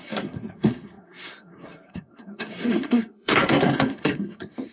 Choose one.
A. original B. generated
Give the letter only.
B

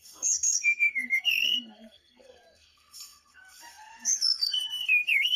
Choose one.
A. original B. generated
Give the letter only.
B